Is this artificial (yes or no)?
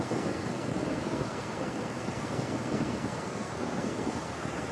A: yes